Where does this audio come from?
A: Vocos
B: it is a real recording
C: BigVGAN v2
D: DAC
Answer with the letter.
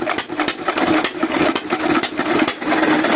C